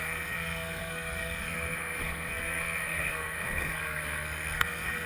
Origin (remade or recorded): remade